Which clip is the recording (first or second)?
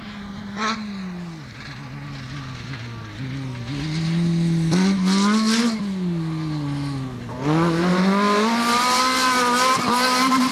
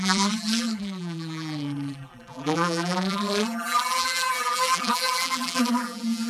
first